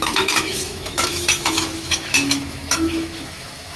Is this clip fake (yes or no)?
yes